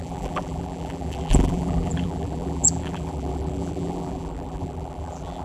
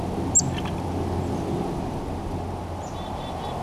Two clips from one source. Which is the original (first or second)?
second